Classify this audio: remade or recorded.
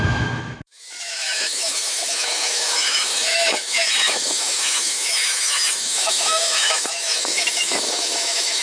remade